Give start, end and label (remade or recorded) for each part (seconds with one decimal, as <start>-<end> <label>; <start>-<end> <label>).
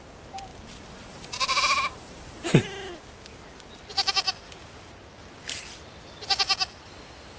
0.0-0.5 recorded; 0.5-2.2 remade; 2.2-3.3 recorded; 3.3-4.1 remade; 4.1-5.2 recorded; 5.2-6.4 remade; 6.4-7.4 recorded